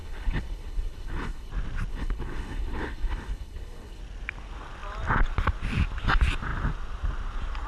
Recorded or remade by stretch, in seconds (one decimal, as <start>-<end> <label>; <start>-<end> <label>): 0.0-1.5 remade; 1.5-1.9 recorded; 1.9-4.0 remade; 4.0-7.7 recorded